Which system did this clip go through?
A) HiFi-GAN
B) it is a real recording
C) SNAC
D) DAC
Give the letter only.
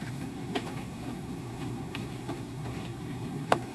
C